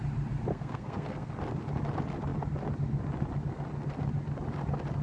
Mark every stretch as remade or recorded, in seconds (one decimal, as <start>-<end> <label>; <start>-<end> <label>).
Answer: 0.0-0.5 recorded; 0.5-1.3 remade; 1.3-5.0 recorded